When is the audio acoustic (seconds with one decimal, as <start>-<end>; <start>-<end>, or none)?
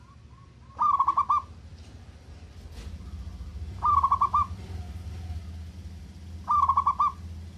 0.0-1.7; 2.5-7.6